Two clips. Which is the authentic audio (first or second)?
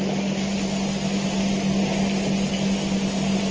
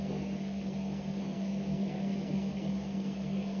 first